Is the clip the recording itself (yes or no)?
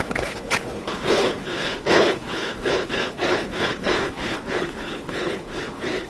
no